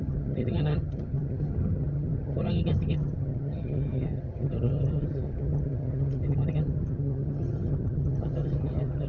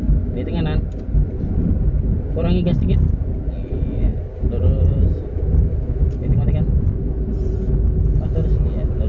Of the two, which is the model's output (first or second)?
first